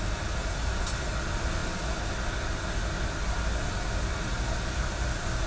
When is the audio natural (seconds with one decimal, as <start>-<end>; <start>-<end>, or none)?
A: 0.0-5.5